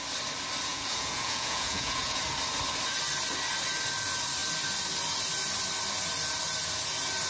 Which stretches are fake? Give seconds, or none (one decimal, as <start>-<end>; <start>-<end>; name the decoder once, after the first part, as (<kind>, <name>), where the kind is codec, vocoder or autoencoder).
0.7-2.2 (vocoder, Vocos)